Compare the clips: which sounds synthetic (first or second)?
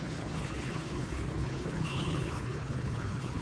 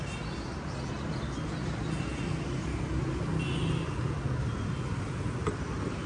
first